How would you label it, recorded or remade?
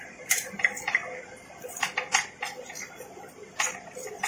remade